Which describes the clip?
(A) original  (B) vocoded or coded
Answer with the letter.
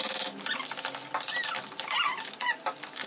A